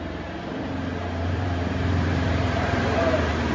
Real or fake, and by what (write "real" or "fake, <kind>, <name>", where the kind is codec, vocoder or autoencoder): fake, vocoder, BigVGAN v2